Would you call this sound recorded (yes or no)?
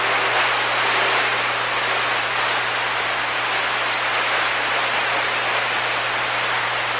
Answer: yes